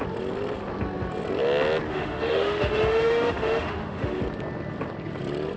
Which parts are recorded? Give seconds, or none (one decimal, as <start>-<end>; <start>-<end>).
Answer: 0.0-1.9; 4.2-5.6